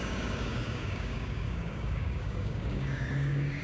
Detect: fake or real fake